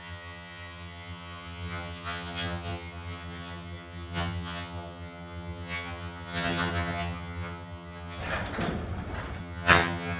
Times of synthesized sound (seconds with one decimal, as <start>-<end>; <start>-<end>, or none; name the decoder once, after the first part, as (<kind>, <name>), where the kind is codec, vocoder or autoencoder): 0.0-8.2 (vocoder, HiFi-GAN); 9.4-10.2